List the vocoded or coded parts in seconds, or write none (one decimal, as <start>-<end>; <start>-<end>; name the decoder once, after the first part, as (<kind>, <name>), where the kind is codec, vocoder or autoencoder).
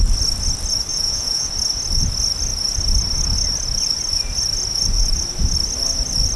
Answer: 0.9-1.5 (vocoder, Vocos)